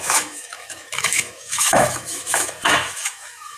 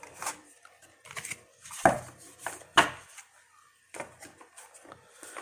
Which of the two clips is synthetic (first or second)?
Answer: first